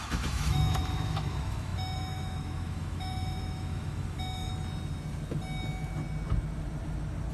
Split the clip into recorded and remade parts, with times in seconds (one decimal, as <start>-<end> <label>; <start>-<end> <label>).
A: 0.0-4.5 remade; 4.5-7.3 recorded

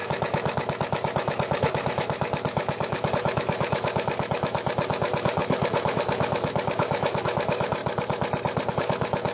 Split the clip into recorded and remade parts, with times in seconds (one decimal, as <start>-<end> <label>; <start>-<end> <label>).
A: 0.0-7.8 remade; 7.8-8.7 recorded; 8.7-9.3 remade

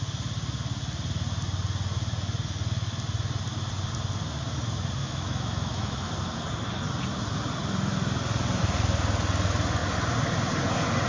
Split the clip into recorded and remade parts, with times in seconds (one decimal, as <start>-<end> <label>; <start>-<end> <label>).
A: 0.0-5.0 recorded; 5.0-6.1 remade; 6.1-11.1 recorded

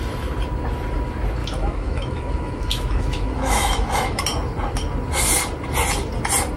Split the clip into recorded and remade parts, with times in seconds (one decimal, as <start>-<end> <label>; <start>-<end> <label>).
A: 0.0-1.4 recorded; 1.4-4.2 remade; 4.2-6.6 recorded